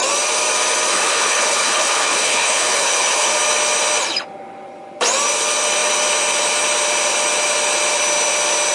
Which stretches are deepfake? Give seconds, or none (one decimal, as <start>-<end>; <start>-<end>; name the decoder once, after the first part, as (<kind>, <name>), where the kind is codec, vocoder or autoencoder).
0.9-3.3 (codec, HILCodec)